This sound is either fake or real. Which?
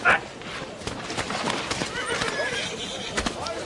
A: real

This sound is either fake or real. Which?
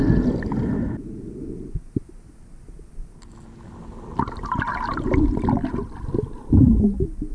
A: real